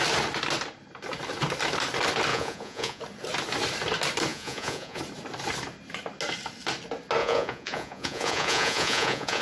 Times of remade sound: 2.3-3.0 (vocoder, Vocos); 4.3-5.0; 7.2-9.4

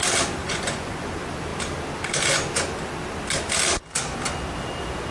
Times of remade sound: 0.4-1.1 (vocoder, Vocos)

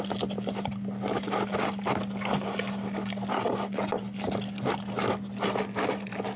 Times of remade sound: 3.3-3.9 (codec, DAC)

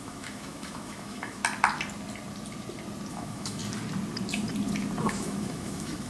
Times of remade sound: 0.0-1.4 (autoencoder, DAC-VAE); 3.1-3.6; 5.0-6.1

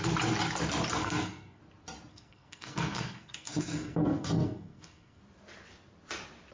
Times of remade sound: 1.0-1.6 (codec, SNAC); 2.1-5.2

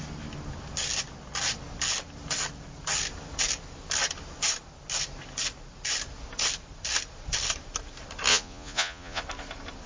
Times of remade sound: 8.3-9.2 (vocoder, Vocos)